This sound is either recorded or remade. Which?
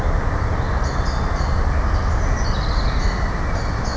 recorded